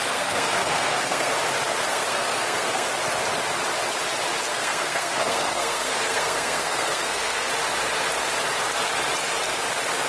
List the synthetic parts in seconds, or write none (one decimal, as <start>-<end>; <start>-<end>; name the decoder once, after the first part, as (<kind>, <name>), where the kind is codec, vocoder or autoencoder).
0.0-1.3 (codec, SNAC); 1.9-2.9; 4.5-7.5